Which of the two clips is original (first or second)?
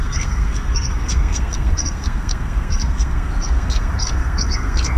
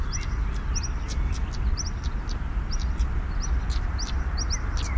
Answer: second